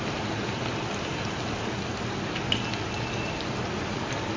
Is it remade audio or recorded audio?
recorded